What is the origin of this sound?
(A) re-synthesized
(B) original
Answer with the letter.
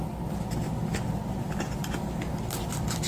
B